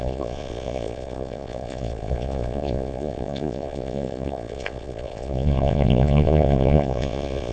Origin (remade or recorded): remade